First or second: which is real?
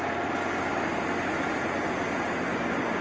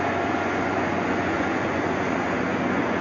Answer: first